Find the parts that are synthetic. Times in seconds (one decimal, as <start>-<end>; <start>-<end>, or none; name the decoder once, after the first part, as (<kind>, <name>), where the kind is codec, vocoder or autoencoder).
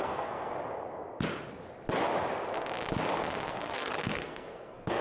0.0-0.5 (codec, SNAC); 3.5-5.0